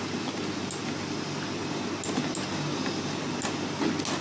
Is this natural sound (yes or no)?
yes